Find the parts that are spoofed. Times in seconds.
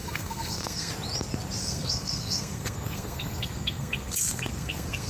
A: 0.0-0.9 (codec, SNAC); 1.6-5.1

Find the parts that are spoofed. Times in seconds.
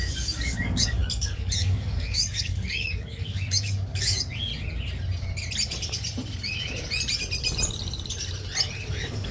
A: 0.0-4.5 (codec, DAC); 8.9-9.3